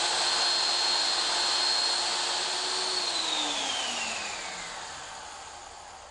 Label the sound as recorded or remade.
recorded